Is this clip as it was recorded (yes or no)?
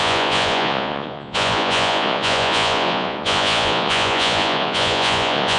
no